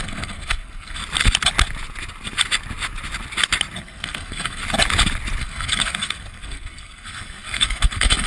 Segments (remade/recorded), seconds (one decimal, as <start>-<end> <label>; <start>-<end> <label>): 0.0-1.0 remade; 1.0-3.8 recorded; 3.8-4.6 remade; 4.6-5.4 recorded; 5.4-8.3 remade